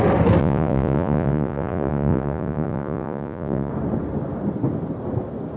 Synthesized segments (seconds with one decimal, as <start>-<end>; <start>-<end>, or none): 0.4-3.7